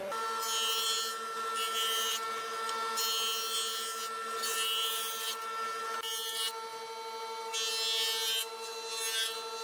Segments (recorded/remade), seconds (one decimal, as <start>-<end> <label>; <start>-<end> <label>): 0.0-9.6 recorded